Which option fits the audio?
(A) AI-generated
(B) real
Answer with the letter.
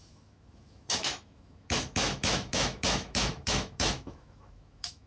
A